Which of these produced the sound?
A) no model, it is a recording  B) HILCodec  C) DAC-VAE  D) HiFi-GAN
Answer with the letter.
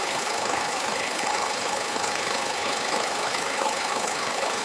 B